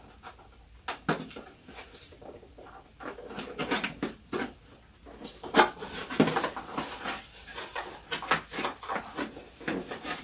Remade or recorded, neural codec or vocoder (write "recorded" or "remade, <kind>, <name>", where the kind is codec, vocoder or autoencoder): recorded